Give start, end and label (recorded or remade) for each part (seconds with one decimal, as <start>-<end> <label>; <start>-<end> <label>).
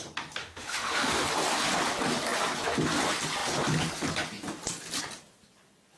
0.0-0.4 recorded; 0.4-1.2 remade; 1.2-6.0 recorded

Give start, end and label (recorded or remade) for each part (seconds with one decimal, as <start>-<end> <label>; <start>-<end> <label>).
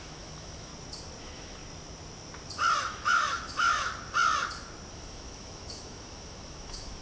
0.0-0.7 remade; 0.7-1.2 recorded; 1.2-1.6 remade; 1.6-2.8 recorded; 2.8-3.9 remade; 3.9-4.9 recorded; 4.9-7.0 remade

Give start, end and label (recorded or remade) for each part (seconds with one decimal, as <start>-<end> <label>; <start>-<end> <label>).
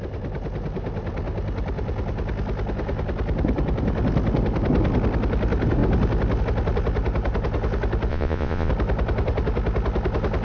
0.0-8.1 recorded; 8.1-8.7 remade; 8.7-10.4 recorded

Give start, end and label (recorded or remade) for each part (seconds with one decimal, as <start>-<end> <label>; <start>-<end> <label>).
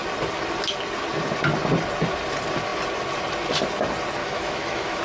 0.0-4.2 recorded; 4.2-5.0 remade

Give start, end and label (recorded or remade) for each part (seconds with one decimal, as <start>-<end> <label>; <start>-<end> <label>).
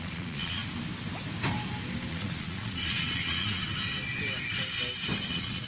0.0-0.6 remade; 0.6-2.1 recorded; 2.1-3.6 remade; 3.6-5.3 recorded; 5.3-5.7 remade